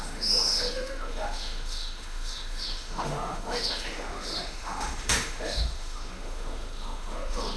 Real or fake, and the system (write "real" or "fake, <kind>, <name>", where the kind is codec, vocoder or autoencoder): fake, autoencoder, DAC-VAE